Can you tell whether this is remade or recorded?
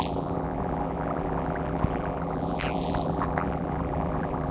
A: remade